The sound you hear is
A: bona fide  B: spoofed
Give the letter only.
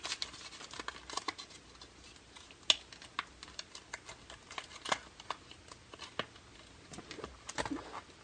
A